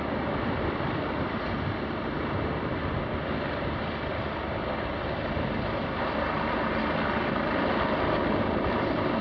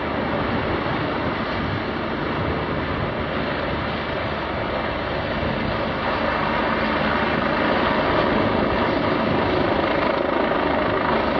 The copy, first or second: first